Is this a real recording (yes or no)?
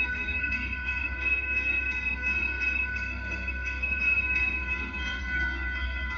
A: no